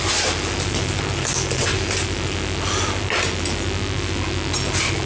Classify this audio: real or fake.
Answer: real